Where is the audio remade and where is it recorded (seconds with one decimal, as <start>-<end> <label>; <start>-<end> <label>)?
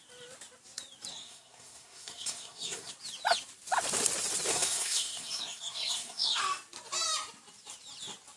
0.0-1.1 recorded; 1.1-2.9 remade; 2.9-4.5 recorded; 4.5-6.4 remade; 6.4-8.4 recorded